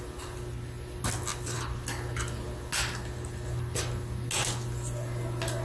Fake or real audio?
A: real